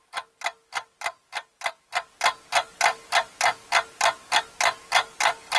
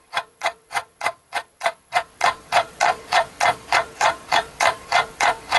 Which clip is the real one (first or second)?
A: first